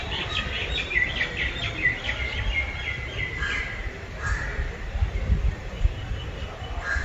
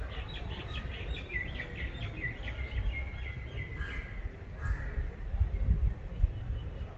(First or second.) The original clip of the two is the second